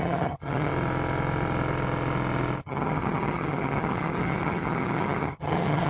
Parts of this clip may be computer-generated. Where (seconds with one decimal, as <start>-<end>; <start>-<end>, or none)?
0.0-0.7; 2.6-5.9